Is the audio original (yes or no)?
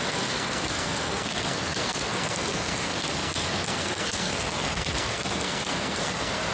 no